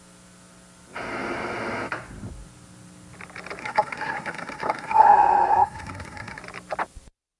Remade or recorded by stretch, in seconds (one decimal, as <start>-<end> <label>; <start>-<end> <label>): 0.0-3.6 recorded; 3.6-6.4 remade; 6.4-7.4 recorded